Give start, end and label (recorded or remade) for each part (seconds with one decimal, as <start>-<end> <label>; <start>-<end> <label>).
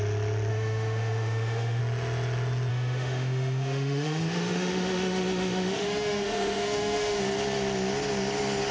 0.0-0.5 recorded; 0.5-1.8 remade; 1.8-2.7 recorded; 2.7-7.2 remade; 7.2-8.7 recorded